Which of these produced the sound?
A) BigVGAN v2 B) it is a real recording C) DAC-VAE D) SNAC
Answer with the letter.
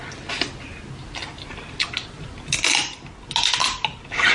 B